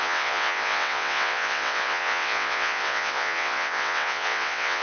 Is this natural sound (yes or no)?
no